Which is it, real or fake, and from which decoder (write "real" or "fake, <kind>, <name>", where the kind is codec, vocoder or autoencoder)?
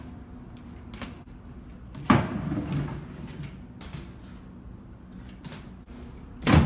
real